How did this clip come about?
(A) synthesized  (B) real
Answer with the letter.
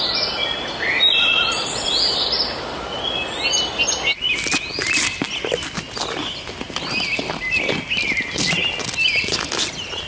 B